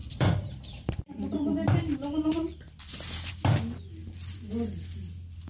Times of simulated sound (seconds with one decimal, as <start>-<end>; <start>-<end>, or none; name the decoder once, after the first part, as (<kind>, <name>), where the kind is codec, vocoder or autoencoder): 0.0-3.3 (vocoder, BigVGAN v2); 4.0-4.5